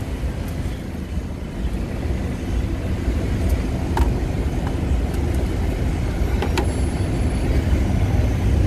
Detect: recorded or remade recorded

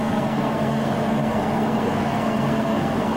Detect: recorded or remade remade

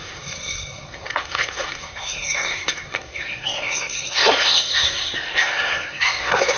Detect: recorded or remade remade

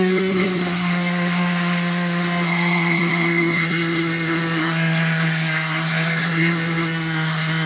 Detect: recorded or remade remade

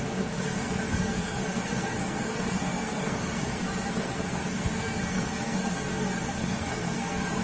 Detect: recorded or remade remade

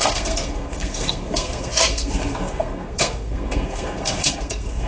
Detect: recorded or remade remade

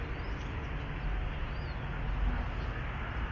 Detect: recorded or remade recorded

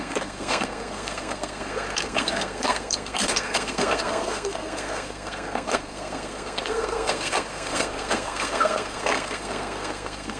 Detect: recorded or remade remade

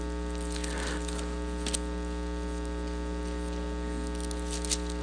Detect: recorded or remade recorded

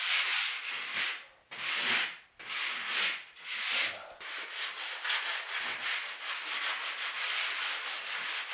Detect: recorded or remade recorded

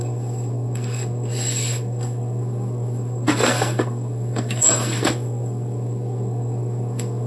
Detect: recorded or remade remade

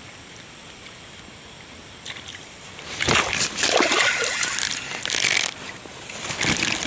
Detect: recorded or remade recorded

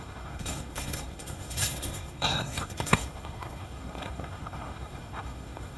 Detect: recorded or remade remade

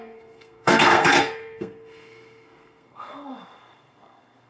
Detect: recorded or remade remade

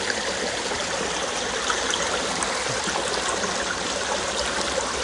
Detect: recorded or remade recorded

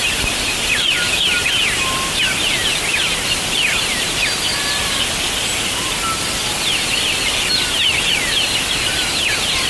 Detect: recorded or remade recorded